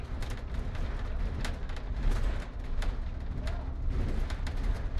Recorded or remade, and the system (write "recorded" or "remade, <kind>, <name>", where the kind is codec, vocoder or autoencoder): recorded